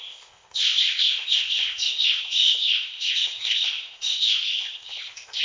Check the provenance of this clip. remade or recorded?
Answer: remade